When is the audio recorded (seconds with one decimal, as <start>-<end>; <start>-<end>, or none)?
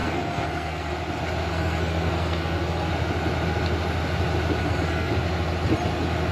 0.9-1.5; 2.9-4.6; 5.1-6.3